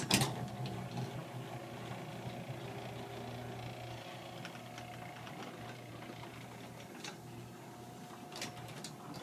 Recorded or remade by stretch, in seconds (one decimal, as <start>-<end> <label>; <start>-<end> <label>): 0.0-9.2 recorded